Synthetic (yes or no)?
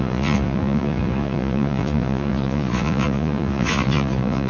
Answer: yes